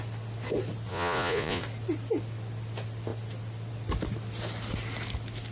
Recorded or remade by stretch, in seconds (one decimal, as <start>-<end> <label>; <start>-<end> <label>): 0.0-0.9 recorded; 0.9-1.6 remade; 1.6-5.5 recorded